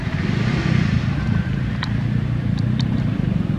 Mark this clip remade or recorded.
remade